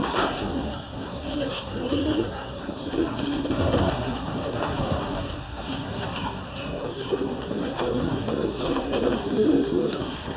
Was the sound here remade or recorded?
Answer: remade